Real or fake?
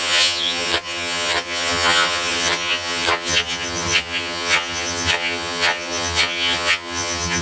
fake